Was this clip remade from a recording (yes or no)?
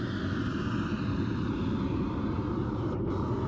no